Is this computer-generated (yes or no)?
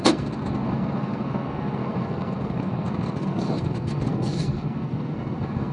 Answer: yes